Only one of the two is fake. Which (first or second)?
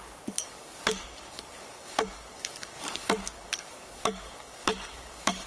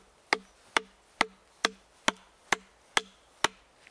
first